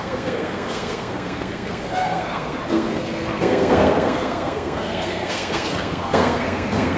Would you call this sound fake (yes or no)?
yes